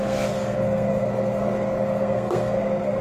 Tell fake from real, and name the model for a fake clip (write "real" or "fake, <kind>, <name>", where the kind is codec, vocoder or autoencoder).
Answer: fake, codec, SNAC